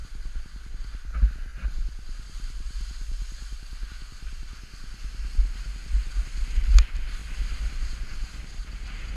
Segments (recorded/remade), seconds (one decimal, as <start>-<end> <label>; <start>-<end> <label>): 0.0-9.2 recorded